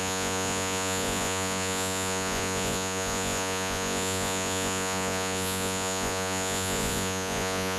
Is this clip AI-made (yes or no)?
yes